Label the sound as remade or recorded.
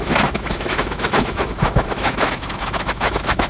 remade